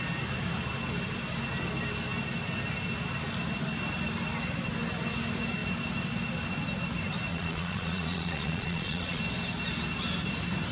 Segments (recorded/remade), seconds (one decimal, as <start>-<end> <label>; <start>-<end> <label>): 0.0-7.3 recorded; 7.3-9.2 remade; 9.2-10.7 recorded